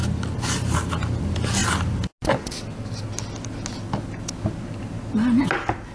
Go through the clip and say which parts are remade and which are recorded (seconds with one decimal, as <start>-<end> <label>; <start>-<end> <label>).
0.0-5.9 recorded